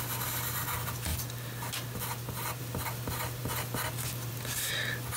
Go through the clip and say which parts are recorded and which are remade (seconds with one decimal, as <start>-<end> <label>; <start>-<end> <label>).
0.0-5.2 recorded